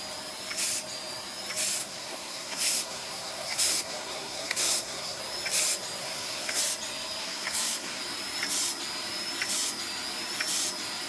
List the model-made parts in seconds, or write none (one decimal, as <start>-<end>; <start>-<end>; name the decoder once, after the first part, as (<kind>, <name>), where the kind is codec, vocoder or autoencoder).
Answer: 1.8-5.2 (codec, SNAC); 6.0-6.6; 7.2-8.0